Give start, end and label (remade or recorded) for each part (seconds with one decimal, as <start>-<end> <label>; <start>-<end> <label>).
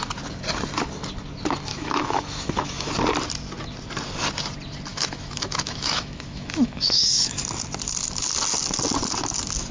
0.0-1.7 recorded; 1.7-2.9 remade; 2.9-4.9 recorded; 4.9-7.4 remade; 7.4-9.7 recorded